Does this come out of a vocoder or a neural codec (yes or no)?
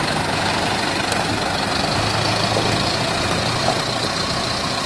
no